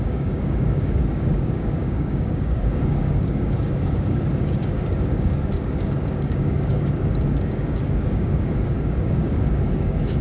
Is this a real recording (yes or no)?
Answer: no